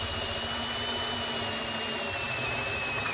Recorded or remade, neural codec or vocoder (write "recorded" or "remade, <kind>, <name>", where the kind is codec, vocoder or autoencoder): recorded